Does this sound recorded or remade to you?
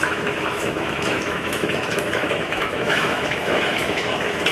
remade